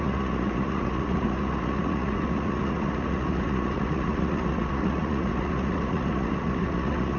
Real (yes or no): no